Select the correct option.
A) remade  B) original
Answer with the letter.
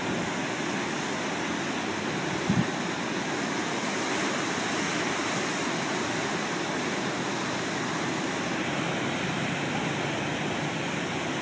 B